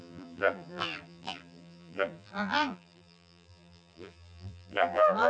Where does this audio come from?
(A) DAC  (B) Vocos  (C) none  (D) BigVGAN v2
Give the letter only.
D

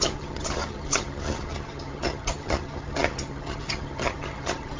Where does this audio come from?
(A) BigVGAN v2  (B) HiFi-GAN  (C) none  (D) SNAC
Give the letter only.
B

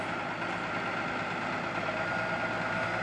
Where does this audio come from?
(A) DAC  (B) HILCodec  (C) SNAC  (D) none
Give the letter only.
D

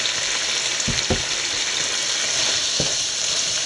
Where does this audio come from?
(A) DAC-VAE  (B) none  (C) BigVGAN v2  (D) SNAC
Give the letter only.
B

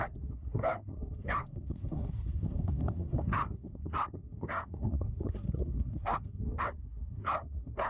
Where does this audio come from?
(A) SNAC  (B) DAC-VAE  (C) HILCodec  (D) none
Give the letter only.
A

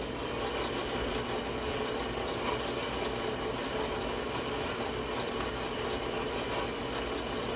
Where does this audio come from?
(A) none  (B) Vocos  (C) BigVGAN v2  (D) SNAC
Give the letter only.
A